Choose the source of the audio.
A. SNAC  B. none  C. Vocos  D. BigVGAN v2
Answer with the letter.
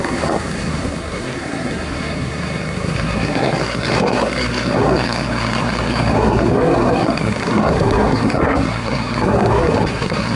A